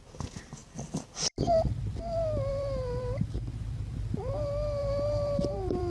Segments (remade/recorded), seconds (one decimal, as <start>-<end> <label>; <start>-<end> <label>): 0.0-0.6 recorded; 0.6-1.8 remade; 1.8-2.5 recorded; 2.5-4.3 remade; 4.3-4.8 recorded; 4.8-5.9 remade